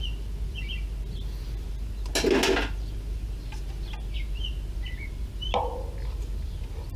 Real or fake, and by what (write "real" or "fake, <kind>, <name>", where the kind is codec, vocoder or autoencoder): real